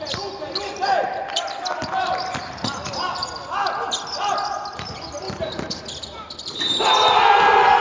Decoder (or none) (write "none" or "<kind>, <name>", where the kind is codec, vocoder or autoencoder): none